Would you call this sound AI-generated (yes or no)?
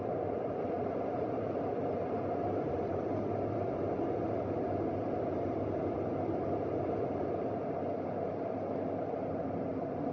no